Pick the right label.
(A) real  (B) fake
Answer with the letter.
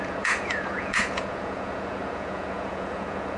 B